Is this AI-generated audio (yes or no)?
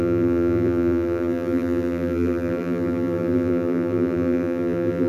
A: yes